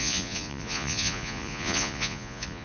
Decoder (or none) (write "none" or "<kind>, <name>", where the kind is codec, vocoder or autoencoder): vocoder, Vocos